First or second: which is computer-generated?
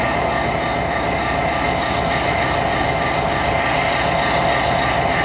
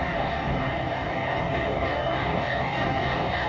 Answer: second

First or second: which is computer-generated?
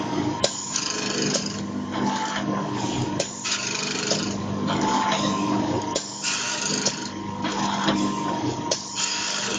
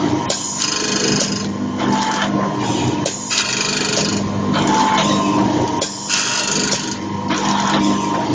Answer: first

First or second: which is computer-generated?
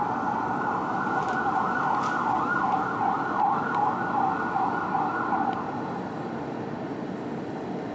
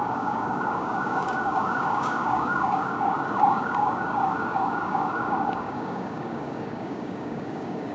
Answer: second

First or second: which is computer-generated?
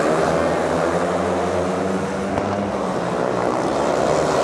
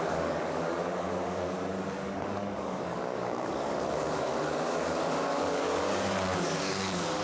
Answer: second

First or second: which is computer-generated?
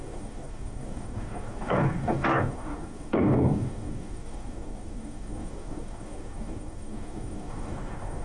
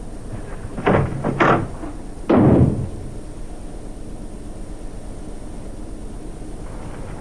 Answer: first